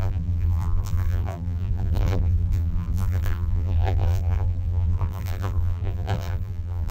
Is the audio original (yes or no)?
no